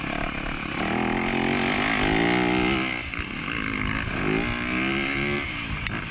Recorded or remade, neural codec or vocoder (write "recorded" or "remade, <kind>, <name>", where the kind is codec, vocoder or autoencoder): recorded